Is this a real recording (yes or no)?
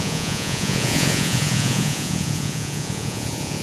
no